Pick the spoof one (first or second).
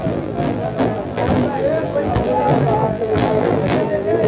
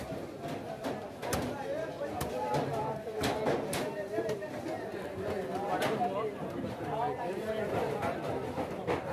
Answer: first